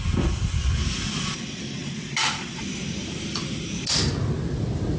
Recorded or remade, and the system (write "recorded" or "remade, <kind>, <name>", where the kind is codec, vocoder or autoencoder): recorded